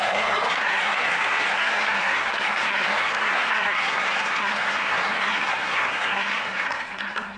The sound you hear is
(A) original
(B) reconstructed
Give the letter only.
B